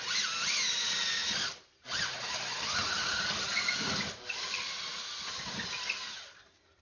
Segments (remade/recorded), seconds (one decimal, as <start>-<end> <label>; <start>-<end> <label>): 0.0-6.8 recorded